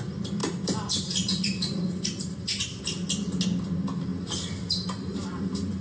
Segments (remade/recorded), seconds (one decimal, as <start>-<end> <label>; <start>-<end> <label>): 0.0-0.4 recorded; 0.4-2.8 remade; 2.8-4.1 recorded; 4.1-5.8 remade